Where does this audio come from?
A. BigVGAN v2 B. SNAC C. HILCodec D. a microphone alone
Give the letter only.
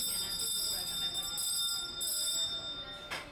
D